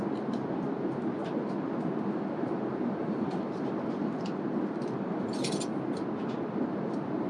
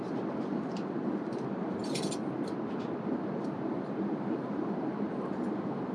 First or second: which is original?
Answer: first